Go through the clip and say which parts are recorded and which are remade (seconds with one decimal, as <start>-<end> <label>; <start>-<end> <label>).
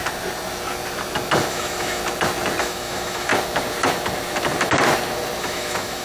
0.0-1.5 recorded; 1.5-2.0 remade; 2.0-2.6 recorded; 2.6-3.3 remade; 3.3-5.4 recorded; 5.4-6.0 remade